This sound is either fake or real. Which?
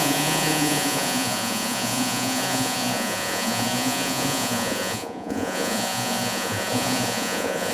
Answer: fake